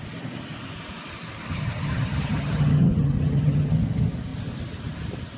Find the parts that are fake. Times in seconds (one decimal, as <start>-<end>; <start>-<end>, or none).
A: 1.5-3.7

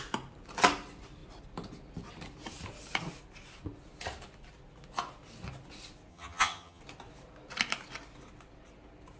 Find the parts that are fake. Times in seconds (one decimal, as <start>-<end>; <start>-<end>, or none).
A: 6.1-6.8

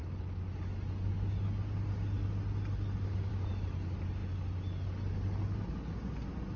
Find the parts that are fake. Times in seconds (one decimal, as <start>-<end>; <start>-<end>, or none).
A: none